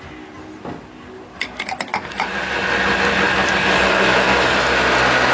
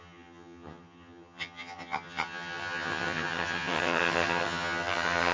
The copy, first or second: second